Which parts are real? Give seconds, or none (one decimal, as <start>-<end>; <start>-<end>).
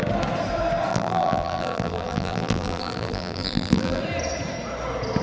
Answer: 0.0-0.9; 4.0-5.2